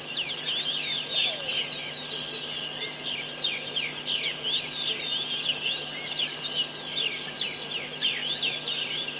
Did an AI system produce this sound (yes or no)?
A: no